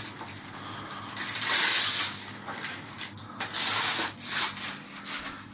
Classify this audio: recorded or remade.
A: recorded